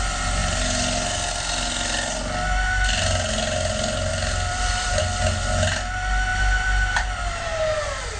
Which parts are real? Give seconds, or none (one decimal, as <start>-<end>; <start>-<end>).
0.0-4.1; 5.0-6.3; 7.4-8.2